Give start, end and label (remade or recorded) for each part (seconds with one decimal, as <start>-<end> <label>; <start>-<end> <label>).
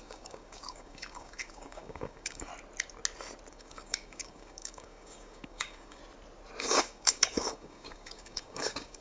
0.0-2.5 remade; 2.5-3.5 recorded; 3.5-6.0 remade; 6.0-6.6 recorded; 6.6-9.0 remade